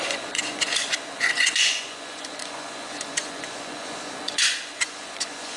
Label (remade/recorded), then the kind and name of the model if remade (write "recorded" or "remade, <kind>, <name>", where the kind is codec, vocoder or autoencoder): remade, vocoder, Vocos